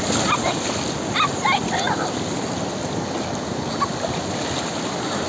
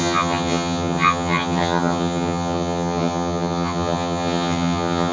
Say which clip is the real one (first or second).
first